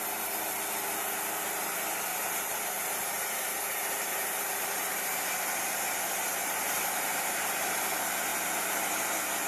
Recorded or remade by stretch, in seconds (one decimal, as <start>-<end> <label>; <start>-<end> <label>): 0.0-2.1 recorded; 2.1-5.6 remade; 5.6-6.4 recorded; 6.4-7.9 remade; 7.9-9.5 recorded